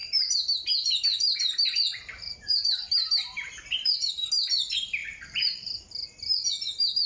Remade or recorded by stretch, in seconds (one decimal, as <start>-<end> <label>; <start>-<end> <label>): 0.0-4.3 remade; 4.3-5.0 recorded; 5.0-5.9 remade; 5.9-7.1 recorded